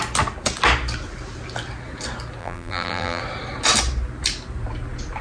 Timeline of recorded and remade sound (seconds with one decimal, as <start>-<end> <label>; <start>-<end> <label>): 0.0-2.4 recorded; 2.4-3.2 remade; 3.2-5.2 recorded